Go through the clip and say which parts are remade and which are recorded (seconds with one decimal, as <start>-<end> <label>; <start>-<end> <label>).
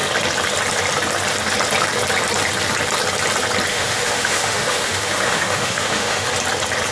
0.0-3.7 recorded; 3.7-6.3 remade; 6.3-6.9 recorded